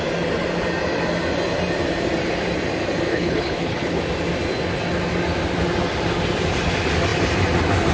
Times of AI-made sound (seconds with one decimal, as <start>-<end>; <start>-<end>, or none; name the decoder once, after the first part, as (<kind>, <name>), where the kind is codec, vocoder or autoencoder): 3.1-4.0 (codec, HILCodec)